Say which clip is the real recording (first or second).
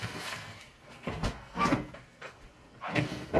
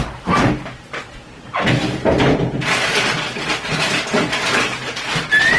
second